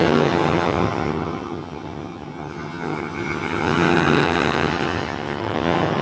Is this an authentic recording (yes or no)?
no